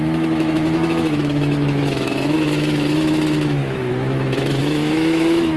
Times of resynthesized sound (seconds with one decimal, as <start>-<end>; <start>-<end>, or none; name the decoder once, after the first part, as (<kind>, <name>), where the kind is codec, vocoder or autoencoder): 0.0-5.6 (autoencoder, DAC-VAE)